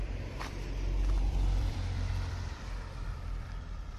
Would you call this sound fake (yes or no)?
yes